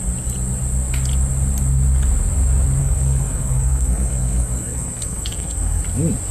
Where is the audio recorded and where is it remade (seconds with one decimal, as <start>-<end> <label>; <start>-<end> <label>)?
0.0-2.8 recorded; 2.8-5.8 remade; 5.8-6.3 recorded